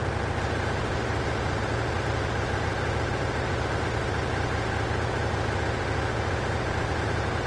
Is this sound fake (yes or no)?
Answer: no